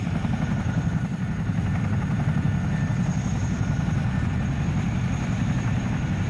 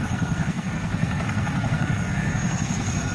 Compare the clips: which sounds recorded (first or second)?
first